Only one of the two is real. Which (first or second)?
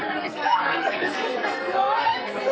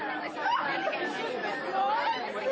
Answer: second